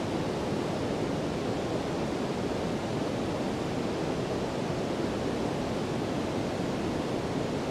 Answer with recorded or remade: recorded